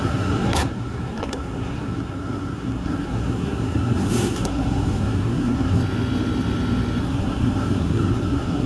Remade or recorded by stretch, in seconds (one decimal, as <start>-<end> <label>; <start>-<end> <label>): 0.0-5.8 remade; 5.8-7.0 recorded; 7.0-8.7 remade